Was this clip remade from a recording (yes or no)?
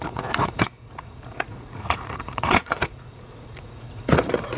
yes